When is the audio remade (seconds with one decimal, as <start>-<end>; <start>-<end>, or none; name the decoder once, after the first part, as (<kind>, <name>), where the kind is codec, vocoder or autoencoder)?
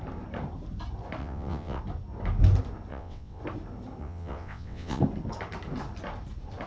1.2-1.8 (vocoder, WaveNeXt); 2.9-3.4; 4.0-5.0